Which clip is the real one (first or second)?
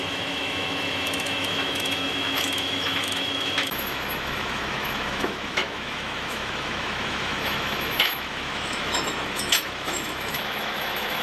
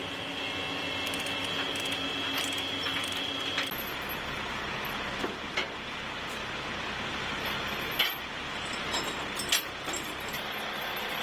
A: second